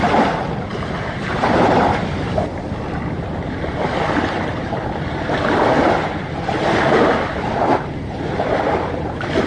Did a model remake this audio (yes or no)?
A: yes